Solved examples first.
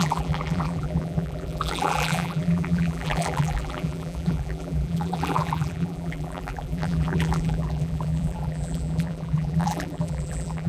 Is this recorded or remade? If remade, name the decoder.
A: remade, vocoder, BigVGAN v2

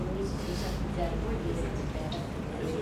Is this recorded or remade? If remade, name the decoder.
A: recorded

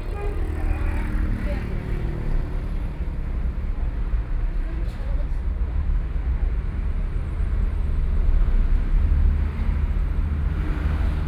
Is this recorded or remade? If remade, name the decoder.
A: recorded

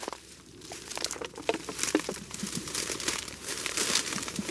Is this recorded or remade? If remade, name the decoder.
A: remade, vocoder, BigVGAN v2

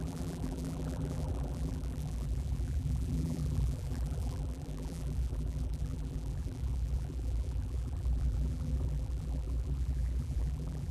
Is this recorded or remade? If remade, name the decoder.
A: remade, vocoder, BigVGAN v2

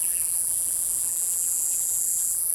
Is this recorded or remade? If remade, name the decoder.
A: remade, vocoder, BigVGAN v2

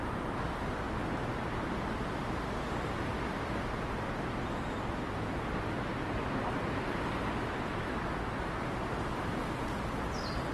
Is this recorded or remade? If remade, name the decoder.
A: recorded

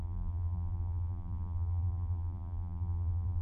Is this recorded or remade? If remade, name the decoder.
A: remade, vocoder, BigVGAN v2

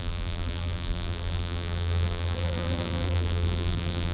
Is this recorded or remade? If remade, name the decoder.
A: remade, vocoder, BigVGAN v2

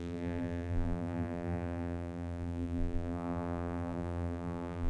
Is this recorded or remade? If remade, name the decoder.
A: remade, vocoder, BigVGAN v2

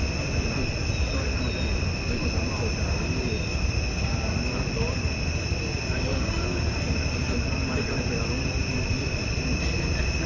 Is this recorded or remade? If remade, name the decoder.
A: recorded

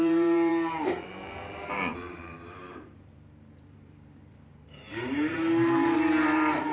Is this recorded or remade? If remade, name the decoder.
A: remade, vocoder, BigVGAN v2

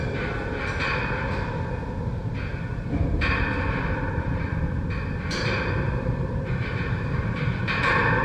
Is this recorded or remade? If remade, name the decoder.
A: remade, vocoder, BigVGAN v2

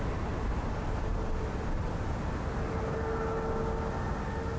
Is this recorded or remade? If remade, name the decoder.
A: recorded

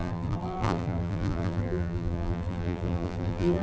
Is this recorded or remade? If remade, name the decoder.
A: remade, vocoder, BigVGAN v2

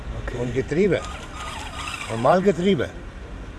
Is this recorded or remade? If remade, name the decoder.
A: remade, vocoder, BigVGAN v2